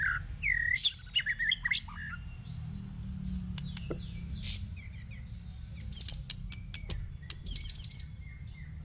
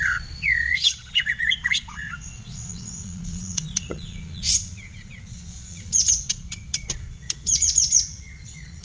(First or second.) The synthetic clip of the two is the second